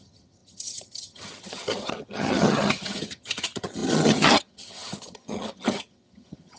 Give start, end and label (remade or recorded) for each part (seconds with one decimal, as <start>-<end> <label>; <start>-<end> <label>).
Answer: 0.0-6.6 remade